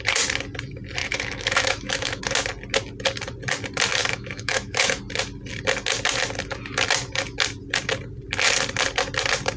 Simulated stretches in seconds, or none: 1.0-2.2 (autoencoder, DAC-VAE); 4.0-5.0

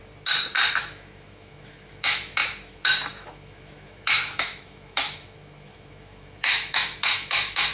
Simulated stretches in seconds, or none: 0.8-7.7 (autoencoder, DAC-VAE)